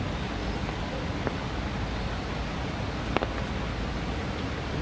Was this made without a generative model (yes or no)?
yes